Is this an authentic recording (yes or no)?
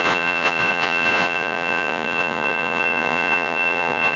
no